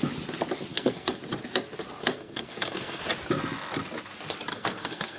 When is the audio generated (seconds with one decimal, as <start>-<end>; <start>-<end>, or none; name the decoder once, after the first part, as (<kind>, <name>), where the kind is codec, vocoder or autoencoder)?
0.7-1.2 (codec, SNAC); 2.0-3.0; 4.5-5.2